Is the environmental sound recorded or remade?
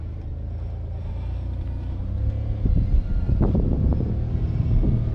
recorded